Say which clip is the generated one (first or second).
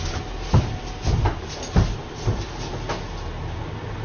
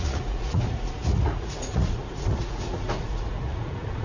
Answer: second